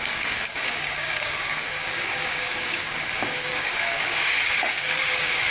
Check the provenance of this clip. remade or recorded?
remade